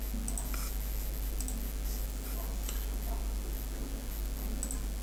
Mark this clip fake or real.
real